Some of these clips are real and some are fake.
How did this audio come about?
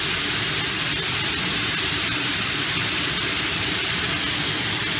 real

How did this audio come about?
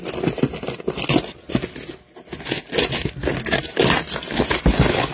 real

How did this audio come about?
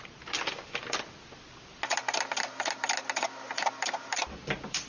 real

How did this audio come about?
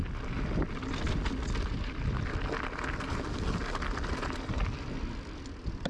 real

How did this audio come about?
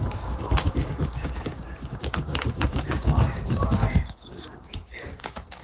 fake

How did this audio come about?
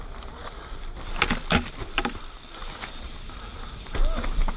real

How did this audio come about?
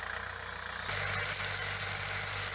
real